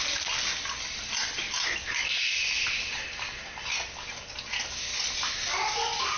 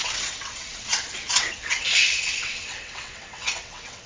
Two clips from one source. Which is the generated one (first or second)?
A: second